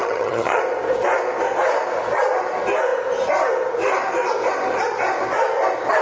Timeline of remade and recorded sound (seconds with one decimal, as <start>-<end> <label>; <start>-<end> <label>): 0.0-0.6 remade; 0.6-6.0 recorded